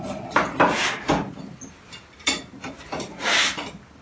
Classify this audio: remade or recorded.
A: recorded